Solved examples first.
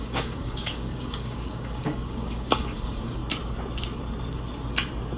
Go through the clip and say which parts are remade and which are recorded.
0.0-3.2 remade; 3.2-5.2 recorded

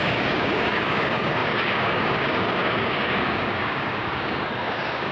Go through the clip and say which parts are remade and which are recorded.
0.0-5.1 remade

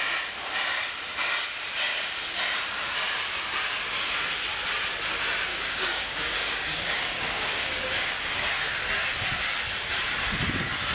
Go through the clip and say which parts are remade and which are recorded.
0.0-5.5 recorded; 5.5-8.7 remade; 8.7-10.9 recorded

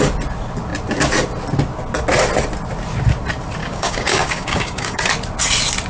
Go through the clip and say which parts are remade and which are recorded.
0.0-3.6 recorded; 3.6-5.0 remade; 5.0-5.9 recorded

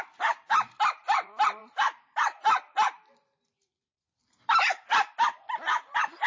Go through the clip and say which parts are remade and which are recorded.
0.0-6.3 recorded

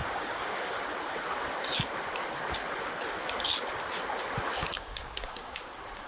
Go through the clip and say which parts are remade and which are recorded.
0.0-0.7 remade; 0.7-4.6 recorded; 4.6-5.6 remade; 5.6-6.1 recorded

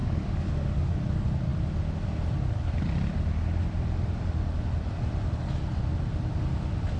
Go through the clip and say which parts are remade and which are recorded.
0.0-1.0 remade; 1.0-7.0 recorded